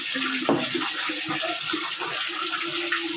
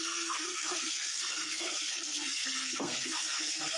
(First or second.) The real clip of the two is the first